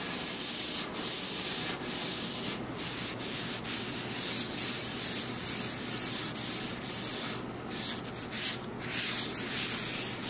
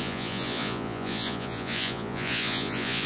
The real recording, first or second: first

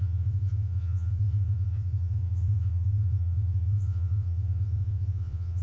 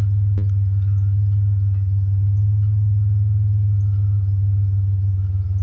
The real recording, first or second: second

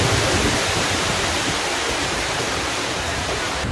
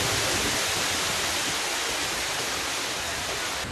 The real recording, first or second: second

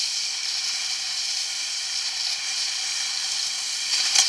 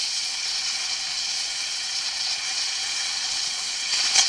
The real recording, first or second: first